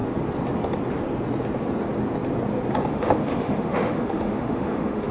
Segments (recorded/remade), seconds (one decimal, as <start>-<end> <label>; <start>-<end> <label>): 0.0-2.9 recorded; 2.9-5.1 remade